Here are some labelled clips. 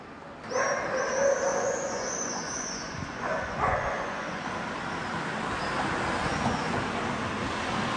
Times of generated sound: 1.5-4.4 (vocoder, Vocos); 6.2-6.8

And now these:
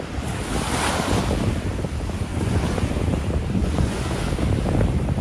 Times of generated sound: 2.3-2.9 (vocoder, Vocos); 3.6-4.2

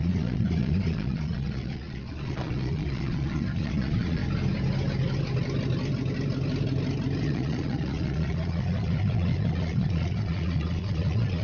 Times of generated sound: 0.0-4.2 (vocoder, Vocos); 7.2-11.4

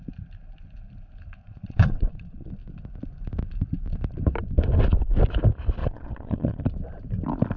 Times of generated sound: 1.4-2.5 (vocoder, Vocos); 5.8-6.6

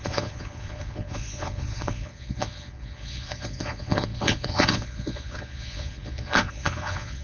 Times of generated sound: 0.0-7.2 (vocoder, Vocos)

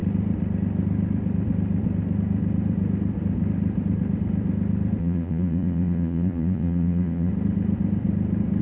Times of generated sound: 5.0-7.3 (vocoder, Vocos)